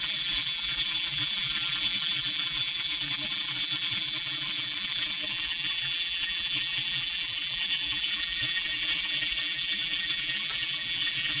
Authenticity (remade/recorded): remade